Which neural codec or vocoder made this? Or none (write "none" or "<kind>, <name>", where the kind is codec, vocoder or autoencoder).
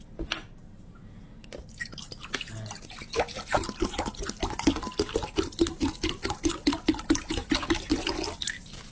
none